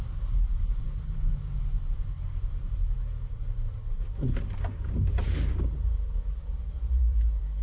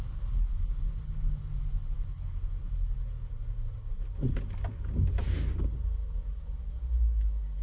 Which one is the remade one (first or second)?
first